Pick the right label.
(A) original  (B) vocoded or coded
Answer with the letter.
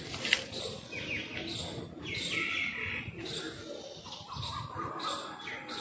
A